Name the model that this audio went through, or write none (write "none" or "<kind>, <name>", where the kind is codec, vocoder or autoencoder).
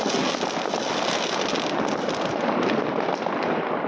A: none